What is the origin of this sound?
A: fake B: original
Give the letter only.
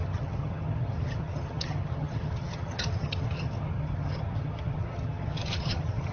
A